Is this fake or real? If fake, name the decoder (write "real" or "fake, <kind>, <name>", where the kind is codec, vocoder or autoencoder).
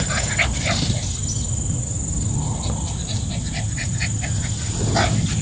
real